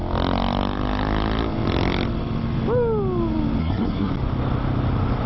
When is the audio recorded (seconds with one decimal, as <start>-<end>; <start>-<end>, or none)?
0.0-3.6; 4.1-5.3